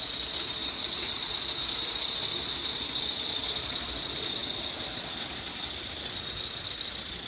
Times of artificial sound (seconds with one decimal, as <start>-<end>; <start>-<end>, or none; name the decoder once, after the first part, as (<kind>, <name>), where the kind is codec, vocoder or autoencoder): 0.0-7.3 (vocoder, BigVGAN v2)